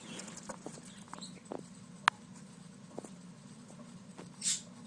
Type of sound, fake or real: real